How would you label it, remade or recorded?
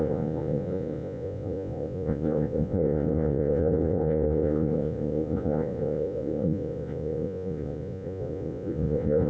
remade